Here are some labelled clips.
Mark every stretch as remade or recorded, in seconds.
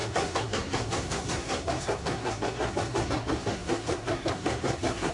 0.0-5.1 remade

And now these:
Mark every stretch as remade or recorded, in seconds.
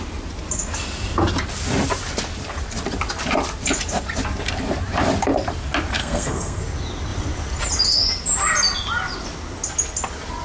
0.0-6.0 recorded; 6.0-6.6 remade; 6.6-10.4 recorded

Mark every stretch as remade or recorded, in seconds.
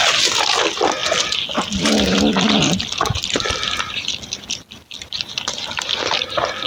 0.0-6.7 recorded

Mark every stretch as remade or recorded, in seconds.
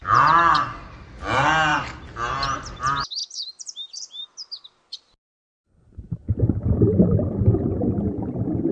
0.0-8.7 recorded